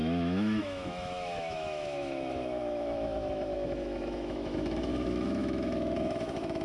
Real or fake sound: fake